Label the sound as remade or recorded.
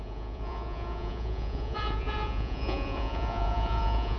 remade